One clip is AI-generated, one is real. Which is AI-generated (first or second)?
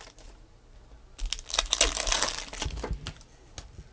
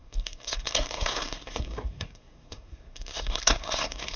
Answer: second